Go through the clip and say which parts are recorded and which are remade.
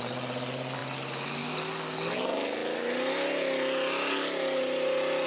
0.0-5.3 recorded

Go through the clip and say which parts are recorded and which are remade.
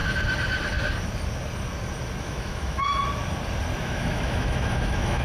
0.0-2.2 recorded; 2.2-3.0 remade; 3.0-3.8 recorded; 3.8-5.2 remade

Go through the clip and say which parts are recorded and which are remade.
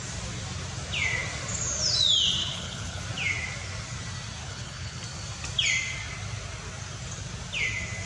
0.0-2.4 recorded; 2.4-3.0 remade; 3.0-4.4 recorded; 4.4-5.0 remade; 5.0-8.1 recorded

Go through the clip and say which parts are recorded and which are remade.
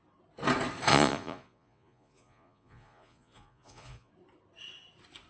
0.0-0.9 recorded; 0.9-4.1 remade; 4.1-5.3 recorded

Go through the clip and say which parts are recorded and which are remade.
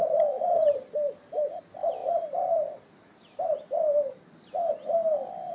0.0-5.5 recorded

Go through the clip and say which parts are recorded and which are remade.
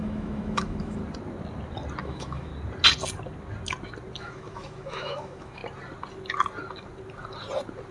0.0-1.0 remade; 1.0-2.0 recorded; 2.0-2.5 remade; 2.5-4.2 recorded; 4.2-5.6 remade; 5.6-7.9 recorded